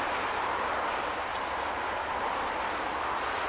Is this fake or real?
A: real